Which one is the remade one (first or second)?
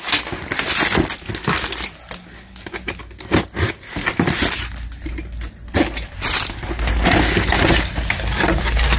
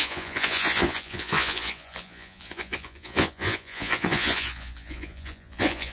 second